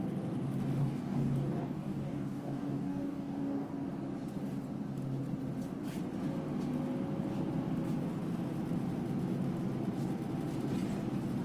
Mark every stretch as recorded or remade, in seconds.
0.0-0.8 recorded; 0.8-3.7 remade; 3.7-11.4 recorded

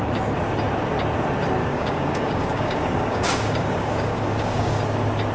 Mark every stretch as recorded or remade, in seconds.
0.0-1.6 recorded; 1.6-4.8 remade; 4.8-5.3 recorded

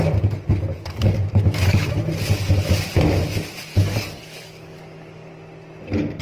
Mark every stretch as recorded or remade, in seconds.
0.0-0.7 recorded; 0.7-2.0 remade; 2.0-3.7 recorded; 3.7-5.3 remade; 5.3-6.2 recorded

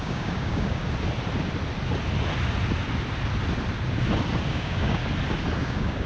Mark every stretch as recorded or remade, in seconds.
0.0-0.8 remade; 0.8-4.5 recorded; 4.5-5.0 remade; 5.0-5.6 recorded; 5.6-6.1 remade

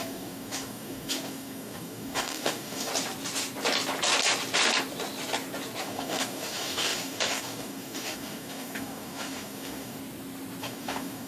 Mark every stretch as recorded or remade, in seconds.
0.0-2.9 remade; 2.9-5.8 recorded; 5.8-10.0 remade; 10.0-10.6 recorded; 10.6-11.3 remade